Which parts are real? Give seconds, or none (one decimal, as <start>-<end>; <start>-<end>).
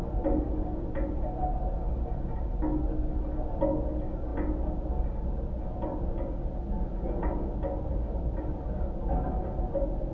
0.0-10.1